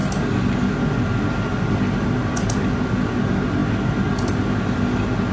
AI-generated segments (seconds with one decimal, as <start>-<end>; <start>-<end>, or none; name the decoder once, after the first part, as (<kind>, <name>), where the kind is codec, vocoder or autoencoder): none